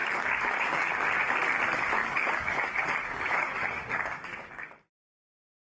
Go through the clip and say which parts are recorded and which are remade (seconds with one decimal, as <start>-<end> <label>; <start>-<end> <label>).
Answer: 0.0-0.9 remade; 0.9-2.0 recorded; 2.0-4.7 remade; 4.7-5.6 recorded

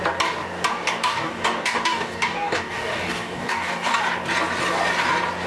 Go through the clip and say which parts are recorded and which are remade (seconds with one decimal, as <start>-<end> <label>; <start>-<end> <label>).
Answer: 0.0-0.7 recorded; 0.7-4.0 remade; 4.0-5.5 recorded

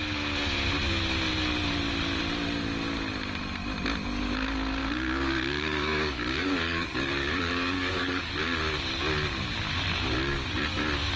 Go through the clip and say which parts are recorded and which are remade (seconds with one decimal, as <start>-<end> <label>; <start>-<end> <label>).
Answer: 0.0-4.8 recorded; 4.8-8.4 remade; 8.4-11.2 recorded

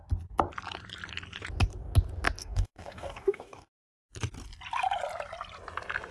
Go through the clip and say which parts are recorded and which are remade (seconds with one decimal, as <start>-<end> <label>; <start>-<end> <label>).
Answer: 0.0-2.4 recorded; 2.4-4.0 remade; 4.0-6.1 recorded

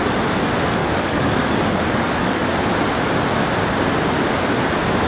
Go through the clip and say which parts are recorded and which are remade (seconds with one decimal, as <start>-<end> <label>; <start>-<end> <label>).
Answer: 0.0-0.8 recorded; 0.8-2.4 remade; 2.4-5.1 recorded

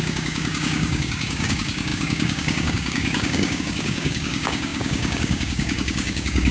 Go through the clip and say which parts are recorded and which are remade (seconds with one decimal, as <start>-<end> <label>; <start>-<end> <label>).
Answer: 0.0-6.5 remade